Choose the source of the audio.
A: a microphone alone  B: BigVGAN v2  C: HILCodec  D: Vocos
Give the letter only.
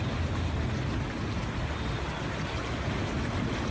A